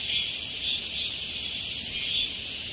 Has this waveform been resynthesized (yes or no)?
no